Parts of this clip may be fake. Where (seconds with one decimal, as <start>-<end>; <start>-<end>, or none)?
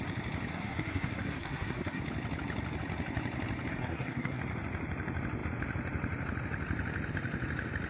0.5-2.0; 3.7-4.4